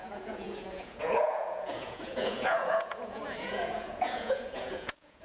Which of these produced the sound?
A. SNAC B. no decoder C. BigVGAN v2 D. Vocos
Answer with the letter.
D